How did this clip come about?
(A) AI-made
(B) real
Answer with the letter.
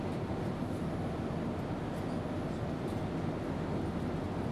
B